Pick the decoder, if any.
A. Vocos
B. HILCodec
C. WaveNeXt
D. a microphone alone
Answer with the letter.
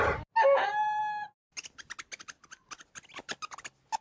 D